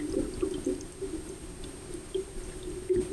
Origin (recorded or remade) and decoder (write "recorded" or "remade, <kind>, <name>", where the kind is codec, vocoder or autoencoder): recorded